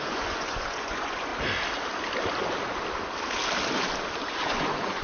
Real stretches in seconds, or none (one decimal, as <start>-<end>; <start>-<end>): 1.3-4.3